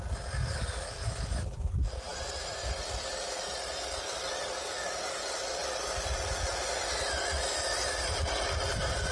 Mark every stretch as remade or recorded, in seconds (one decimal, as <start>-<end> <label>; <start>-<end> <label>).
0.0-9.1 recorded